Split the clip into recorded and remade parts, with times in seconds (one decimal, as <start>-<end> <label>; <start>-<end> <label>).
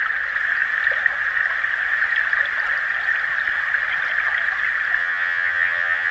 0.0-5.0 recorded; 5.0-6.1 remade